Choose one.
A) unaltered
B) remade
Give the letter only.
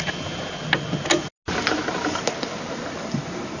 A